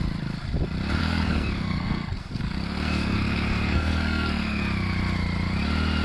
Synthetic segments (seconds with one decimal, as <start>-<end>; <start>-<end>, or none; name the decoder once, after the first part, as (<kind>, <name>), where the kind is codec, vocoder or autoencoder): 1.0-4.6 (codec, SNAC)